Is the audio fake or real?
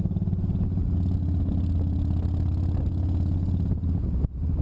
real